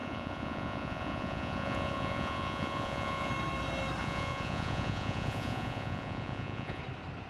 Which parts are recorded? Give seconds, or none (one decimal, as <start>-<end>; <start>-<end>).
3.3-4.0; 6.8-7.3